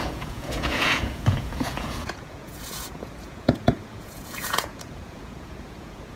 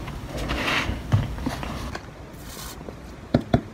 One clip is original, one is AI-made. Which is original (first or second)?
second